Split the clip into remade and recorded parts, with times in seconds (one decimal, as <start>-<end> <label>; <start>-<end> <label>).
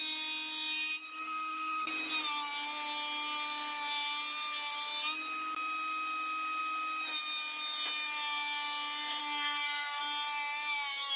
0.0-1.1 recorded; 1.1-1.9 remade; 1.9-9.2 recorded; 9.2-10.0 remade; 10.0-11.2 recorded